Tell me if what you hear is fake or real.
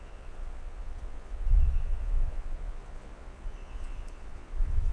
fake